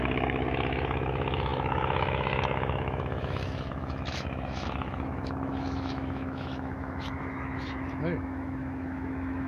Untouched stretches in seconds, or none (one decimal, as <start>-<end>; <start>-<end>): none